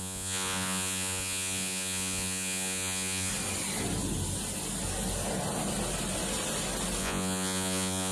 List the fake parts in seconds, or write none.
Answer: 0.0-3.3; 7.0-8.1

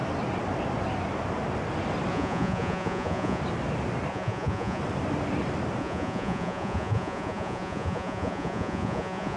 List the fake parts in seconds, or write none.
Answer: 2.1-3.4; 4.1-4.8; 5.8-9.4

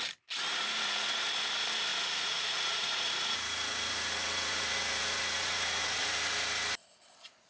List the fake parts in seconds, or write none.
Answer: 0.5-1.2; 1.9-5.8

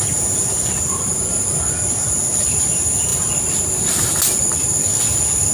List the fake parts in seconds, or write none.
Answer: none

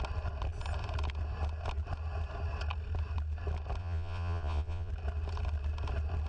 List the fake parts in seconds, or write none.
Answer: 3.8-4.9

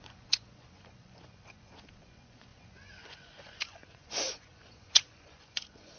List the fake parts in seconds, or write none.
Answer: 0.0-6.0